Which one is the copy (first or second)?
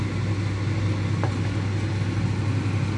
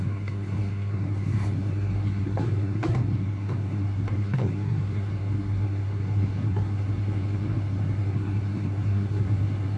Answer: second